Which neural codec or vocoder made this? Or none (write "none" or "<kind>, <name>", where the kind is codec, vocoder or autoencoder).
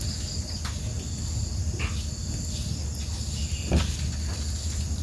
none